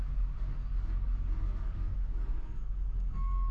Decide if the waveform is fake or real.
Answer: fake